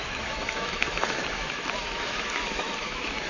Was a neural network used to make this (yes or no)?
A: yes